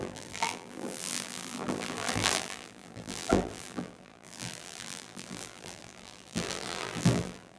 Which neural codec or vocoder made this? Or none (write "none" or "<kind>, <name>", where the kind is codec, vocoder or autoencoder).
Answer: vocoder, BigVGAN v2